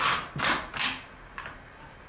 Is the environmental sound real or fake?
real